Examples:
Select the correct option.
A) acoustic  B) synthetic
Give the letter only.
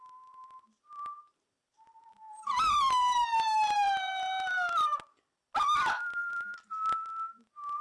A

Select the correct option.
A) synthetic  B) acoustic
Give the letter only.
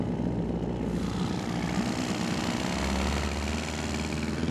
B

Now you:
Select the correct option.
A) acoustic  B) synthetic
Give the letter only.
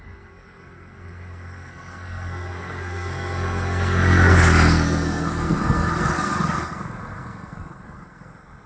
B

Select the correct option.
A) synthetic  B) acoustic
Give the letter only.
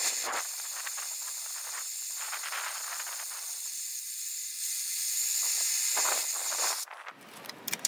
B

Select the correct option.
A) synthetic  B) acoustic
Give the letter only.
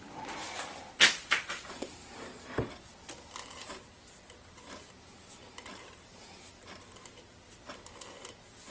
B